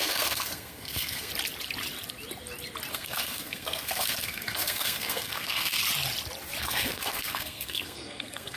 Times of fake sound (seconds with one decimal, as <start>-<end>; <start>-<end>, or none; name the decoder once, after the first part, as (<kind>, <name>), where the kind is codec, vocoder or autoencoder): 0.0-1.3 (codec, SNAC); 2.9-5.8; 6.6-8.6